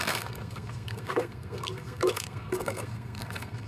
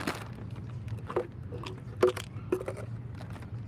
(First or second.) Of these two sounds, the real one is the second